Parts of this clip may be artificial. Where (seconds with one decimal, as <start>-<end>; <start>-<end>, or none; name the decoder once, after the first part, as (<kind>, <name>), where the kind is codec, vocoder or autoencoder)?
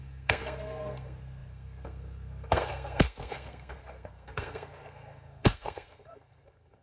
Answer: 0.0-6.8 (codec, SNAC)